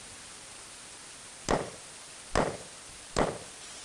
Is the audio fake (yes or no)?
no